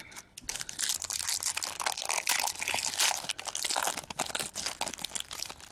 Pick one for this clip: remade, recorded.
recorded